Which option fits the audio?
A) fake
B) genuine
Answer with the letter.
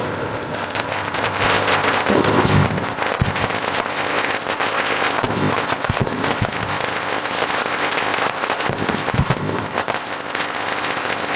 A